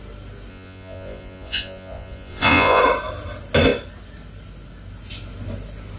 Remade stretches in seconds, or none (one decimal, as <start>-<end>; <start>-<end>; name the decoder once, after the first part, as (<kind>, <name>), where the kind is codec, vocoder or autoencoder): 0.5-2.8 (vocoder, Vocos)